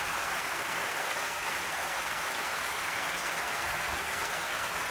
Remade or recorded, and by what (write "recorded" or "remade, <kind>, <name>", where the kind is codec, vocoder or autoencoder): remade, codec, SNAC